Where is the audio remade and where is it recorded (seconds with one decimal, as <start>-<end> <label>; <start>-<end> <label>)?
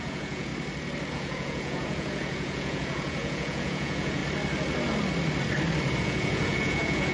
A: 0.0-0.5 remade; 0.5-1.1 recorded; 1.1-4.2 remade; 4.2-6.0 recorded; 6.0-7.1 remade